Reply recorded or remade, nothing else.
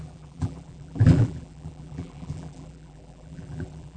remade